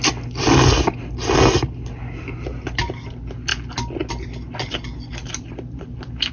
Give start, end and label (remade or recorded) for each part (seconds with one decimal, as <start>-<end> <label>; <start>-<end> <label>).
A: 0.0-5.2 recorded; 5.2-6.3 remade